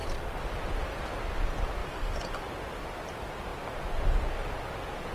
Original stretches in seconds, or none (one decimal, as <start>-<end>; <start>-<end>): 0.0-1.8; 2.4-5.1